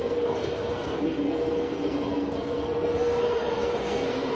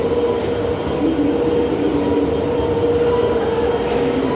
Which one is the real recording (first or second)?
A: second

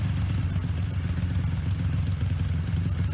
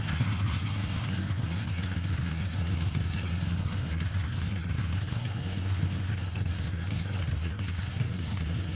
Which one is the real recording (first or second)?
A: first